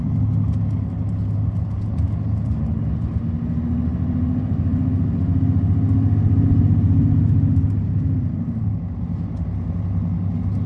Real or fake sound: real